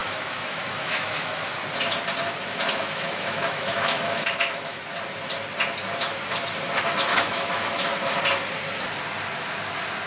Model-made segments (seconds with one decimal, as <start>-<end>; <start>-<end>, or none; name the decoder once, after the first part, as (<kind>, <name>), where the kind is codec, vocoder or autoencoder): 0.0-1.4 (autoencoder, DAC-VAE); 2.7-4.8; 7.1-8.2